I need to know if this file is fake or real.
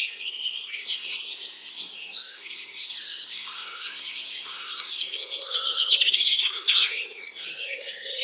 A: fake